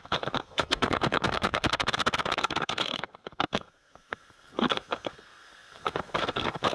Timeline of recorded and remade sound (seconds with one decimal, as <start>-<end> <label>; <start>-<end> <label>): 0.0-6.7 remade